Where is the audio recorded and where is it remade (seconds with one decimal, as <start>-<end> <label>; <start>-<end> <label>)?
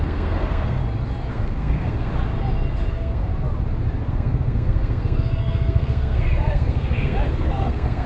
0.0-0.8 remade; 0.8-1.3 recorded; 1.3-2.1 remade; 2.1-2.9 recorded; 2.9-3.3 remade; 3.3-4.1 recorded; 4.1-8.1 remade